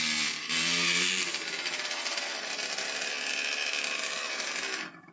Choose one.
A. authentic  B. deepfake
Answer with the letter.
A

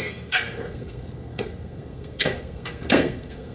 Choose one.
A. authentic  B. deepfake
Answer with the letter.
B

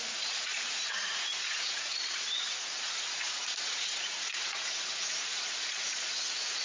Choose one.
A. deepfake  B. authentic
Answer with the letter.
A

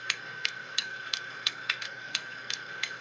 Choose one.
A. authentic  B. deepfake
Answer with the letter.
B